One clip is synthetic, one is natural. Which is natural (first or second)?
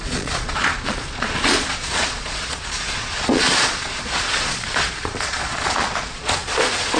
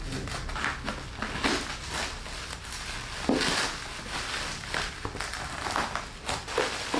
second